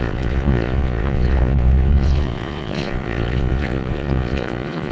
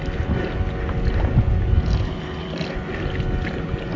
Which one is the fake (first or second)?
first